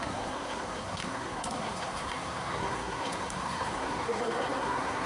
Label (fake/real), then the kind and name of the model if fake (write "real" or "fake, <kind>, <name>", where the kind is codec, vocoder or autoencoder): fake, codec, SNAC